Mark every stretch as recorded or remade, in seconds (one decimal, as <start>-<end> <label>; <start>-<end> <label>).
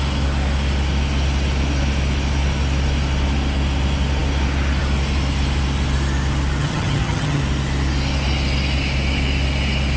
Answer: 0.0-6.6 recorded; 6.6-7.4 remade; 7.4-10.0 recorded